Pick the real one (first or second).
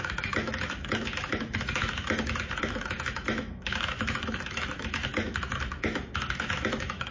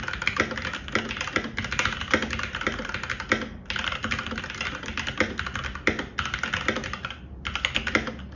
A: second